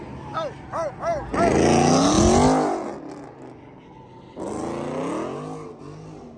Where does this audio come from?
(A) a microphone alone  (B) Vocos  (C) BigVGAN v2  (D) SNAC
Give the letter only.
A